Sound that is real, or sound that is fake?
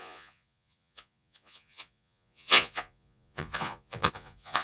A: fake